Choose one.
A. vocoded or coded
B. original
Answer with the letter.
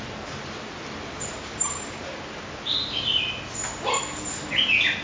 B